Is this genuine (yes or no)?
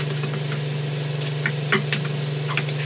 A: yes